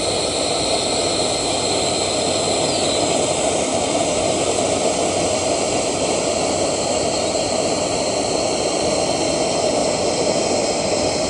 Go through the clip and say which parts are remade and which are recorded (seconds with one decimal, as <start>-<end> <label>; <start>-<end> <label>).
0.0-11.3 recorded